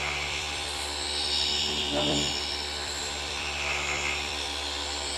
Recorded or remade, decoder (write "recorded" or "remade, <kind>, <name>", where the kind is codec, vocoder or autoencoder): remade, vocoder, BigVGAN v2